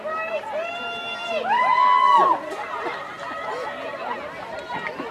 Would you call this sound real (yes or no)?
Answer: yes